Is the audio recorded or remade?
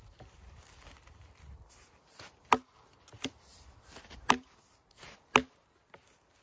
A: recorded